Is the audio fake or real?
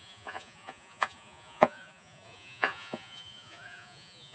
fake